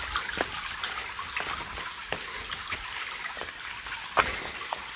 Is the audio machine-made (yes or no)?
no